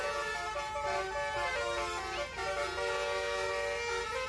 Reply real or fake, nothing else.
real